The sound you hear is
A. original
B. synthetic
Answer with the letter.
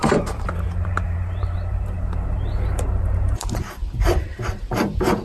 B